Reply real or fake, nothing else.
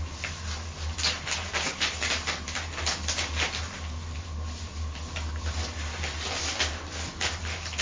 real